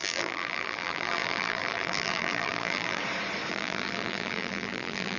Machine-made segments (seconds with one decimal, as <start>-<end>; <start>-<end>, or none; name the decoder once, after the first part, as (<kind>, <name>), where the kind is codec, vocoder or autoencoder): 0.0-3.0 (vocoder, BigVGAN v2); 3.5-5.2